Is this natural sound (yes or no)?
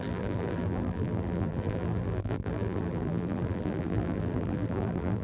no